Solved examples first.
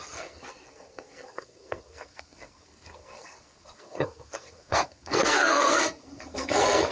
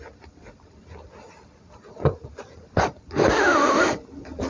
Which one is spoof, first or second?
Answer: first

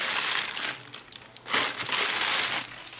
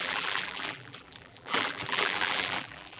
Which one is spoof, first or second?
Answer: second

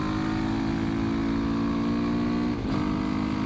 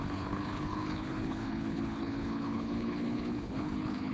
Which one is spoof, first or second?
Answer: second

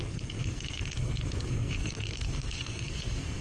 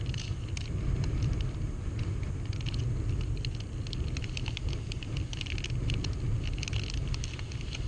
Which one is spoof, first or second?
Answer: first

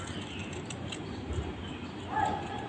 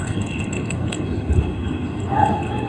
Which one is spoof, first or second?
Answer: second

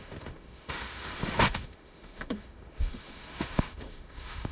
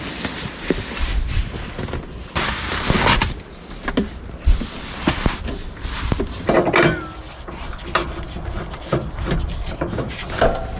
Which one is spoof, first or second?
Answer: first